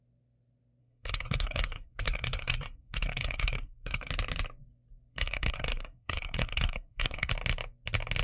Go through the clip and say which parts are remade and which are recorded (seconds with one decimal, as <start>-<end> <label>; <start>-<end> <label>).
0.0-0.8 recorded; 0.8-4.1 remade; 4.1-5.1 recorded; 5.1-7.3 remade; 7.3-8.2 recorded